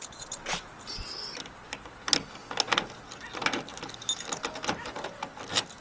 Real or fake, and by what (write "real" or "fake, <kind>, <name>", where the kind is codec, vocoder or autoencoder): real